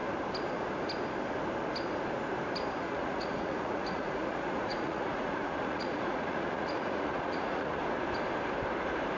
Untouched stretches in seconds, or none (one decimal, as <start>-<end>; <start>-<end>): 0.0-2.8; 7.8-9.2